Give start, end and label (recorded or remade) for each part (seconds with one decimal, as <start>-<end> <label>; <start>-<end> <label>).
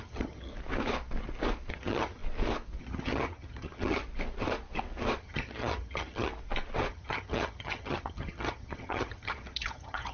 0.0-0.5 remade; 0.5-1.7 recorded; 1.7-2.2 remade; 2.2-2.8 recorded; 2.8-4.0 remade; 4.0-5.2 recorded; 5.2-6.3 remade; 6.3-6.9 recorded; 6.9-10.1 remade